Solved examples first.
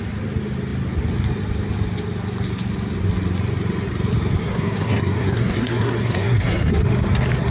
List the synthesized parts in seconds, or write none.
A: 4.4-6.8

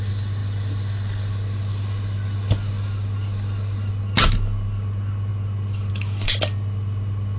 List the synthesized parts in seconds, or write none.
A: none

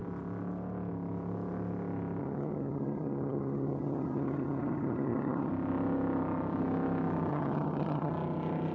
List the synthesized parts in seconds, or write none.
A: 2.2-5.5; 7.3-8.1

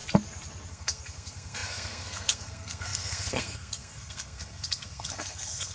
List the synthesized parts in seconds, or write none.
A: 0.7-5.7

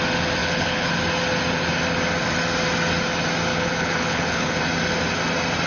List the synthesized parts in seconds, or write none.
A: 0.4-0.9; 3.5-4.6